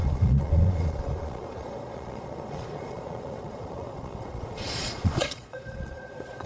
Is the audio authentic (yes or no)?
no